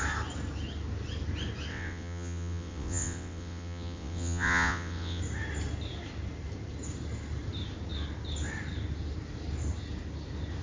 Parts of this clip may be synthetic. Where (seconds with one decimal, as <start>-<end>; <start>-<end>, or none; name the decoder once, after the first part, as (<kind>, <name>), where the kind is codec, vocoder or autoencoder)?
1.7-5.2 (vocoder, WaveNeXt)